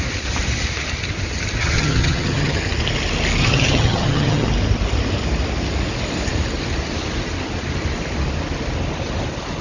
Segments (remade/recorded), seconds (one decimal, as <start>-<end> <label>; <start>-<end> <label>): 0.0-1.6 recorded; 1.6-2.6 remade; 2.6-3.4 recorded; 3.4-4.5 remade; 4.5-9.6 recorded